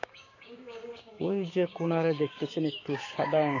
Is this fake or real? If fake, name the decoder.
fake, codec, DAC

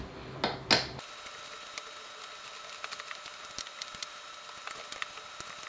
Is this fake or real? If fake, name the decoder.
real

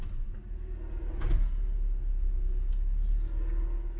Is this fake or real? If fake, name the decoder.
real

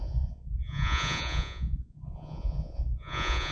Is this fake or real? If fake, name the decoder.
fake, vocoder, Vocos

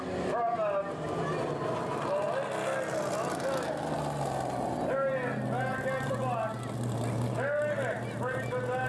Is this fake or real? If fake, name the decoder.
real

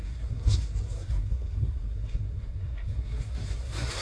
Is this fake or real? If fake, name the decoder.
fake, codec, SNAC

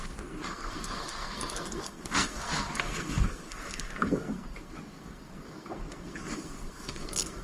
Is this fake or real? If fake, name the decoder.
fake, codec, SNAC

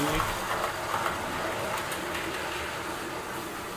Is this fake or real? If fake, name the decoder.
real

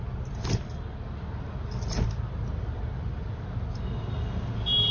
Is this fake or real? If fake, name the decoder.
real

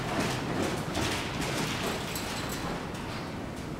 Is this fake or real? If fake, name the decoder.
real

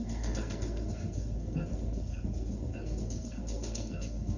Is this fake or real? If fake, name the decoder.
fake, codec, SNAC